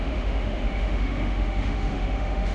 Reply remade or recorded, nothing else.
remade